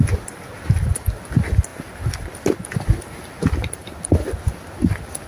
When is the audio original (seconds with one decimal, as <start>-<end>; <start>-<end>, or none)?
0.0-5.3